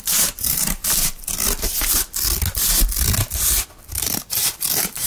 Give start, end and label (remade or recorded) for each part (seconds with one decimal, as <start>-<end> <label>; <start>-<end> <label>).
0.0-0.8 remade; 0.8-3.9 recorded; 3.9-5.1 remade